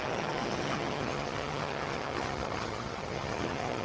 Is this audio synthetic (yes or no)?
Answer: yes